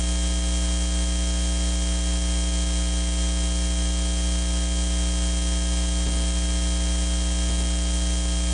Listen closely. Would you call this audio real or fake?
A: real